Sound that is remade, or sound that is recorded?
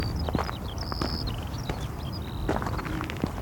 recorded